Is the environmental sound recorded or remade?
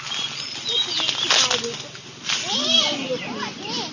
recorded